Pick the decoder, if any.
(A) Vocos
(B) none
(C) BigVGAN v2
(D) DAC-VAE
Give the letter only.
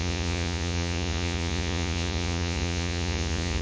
A